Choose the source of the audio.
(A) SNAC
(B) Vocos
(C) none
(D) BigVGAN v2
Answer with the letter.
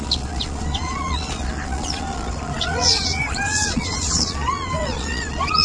B